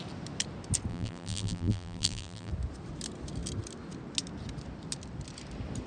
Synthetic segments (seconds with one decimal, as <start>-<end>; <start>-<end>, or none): 0.9-2.5